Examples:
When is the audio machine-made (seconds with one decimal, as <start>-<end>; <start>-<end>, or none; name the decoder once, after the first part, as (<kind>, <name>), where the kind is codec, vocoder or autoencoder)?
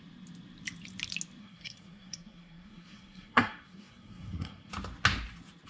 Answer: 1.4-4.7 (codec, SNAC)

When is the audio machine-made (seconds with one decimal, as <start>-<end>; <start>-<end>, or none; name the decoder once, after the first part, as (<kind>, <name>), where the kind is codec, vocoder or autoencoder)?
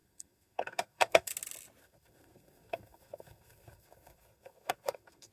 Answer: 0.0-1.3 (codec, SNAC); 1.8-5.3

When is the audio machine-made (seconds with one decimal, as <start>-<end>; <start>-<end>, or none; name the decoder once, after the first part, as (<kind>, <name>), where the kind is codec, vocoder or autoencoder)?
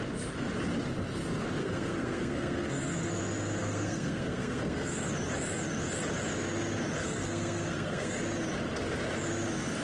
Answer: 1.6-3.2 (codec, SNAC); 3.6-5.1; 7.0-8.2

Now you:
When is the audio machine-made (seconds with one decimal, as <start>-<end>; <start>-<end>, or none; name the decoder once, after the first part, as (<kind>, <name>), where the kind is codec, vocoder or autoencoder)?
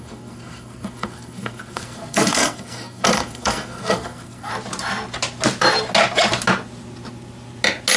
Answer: 0.0-4.5 (codec, SNAC)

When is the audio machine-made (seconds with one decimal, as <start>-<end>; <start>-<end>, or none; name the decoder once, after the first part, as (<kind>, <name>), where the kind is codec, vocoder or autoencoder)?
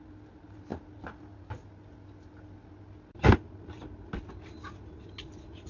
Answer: none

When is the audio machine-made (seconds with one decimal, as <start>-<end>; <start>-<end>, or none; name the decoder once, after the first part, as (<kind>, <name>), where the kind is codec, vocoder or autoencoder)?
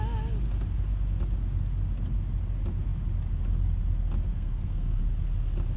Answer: 4.3-5.0 (codec, SNAC)